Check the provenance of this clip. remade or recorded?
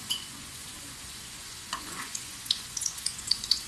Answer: remade